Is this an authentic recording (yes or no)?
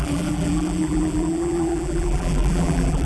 no